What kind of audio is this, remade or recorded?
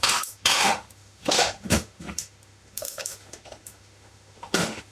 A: remade